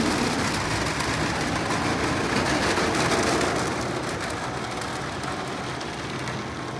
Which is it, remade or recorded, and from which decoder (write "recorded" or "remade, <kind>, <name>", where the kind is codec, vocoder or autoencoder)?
recorded